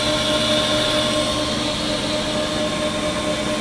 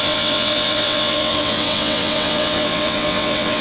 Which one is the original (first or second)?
first